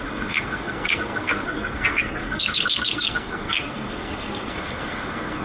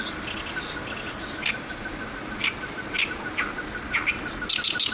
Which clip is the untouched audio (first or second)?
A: second